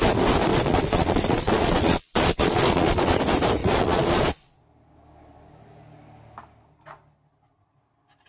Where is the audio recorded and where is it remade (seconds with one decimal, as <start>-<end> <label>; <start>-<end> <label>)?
0.0-0.5 recorded; 0.5-3.2 remade; 3.2-3.6 recorded; 3.6-4.6 remade; 4.6-8.3 recorded